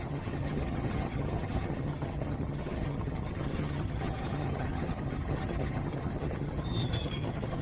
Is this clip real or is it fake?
fake